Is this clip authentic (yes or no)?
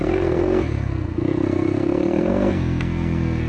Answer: no